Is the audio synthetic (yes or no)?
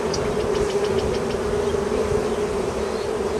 no